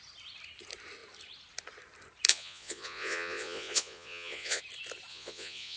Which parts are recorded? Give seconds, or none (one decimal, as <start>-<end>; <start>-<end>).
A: 0.0-2.3; 4.6-5.1